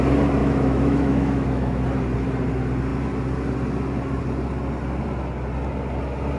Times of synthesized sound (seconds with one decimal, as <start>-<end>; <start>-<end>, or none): 0.4-1.8